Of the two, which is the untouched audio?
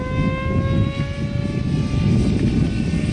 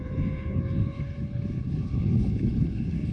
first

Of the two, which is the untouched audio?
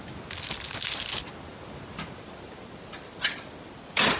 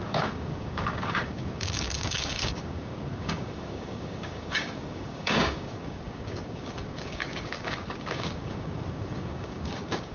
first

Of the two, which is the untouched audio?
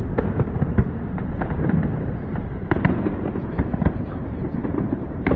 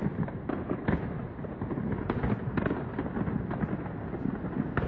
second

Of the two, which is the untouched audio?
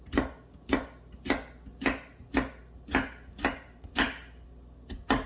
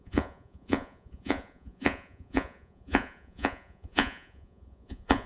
first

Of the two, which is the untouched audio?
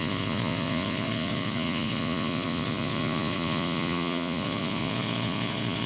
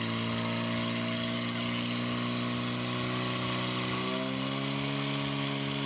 second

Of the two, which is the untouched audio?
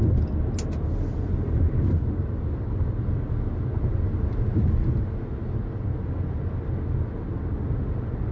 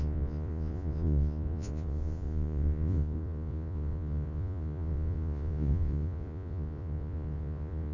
first